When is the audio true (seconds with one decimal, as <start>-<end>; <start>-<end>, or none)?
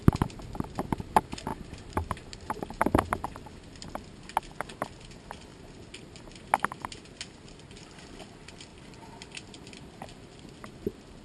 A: 0.0-1.5; 3.9-5.5; 6.2-8.7; 10.2-11.2